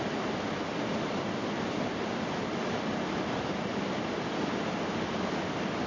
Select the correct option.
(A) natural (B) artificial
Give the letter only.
A